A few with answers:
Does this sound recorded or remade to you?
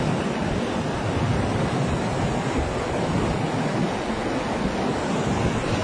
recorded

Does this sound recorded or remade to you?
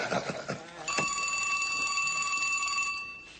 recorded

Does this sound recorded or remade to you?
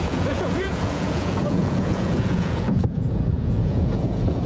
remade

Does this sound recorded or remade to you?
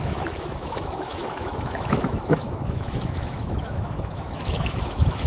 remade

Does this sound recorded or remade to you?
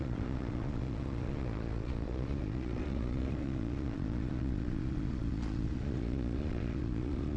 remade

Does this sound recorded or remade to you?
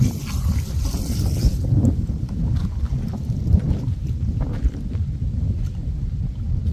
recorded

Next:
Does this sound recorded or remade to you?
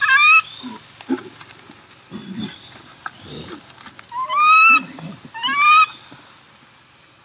recorded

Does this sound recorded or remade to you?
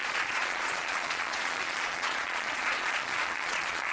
remade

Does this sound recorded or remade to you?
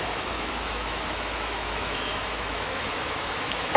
remade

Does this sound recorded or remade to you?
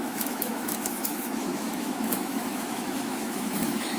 remade